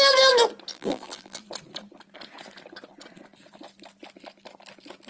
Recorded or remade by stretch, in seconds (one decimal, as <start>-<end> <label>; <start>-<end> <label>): 0.0-0.7 recorded; 0.7-1.4 remade; 1.4-5.1 recorded